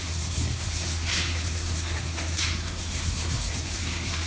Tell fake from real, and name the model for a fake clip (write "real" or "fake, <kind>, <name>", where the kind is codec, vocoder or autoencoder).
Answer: fake, codec, SNAC